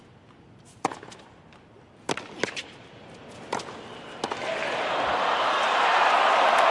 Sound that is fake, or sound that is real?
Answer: real